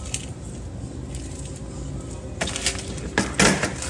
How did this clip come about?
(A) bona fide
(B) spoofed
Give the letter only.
A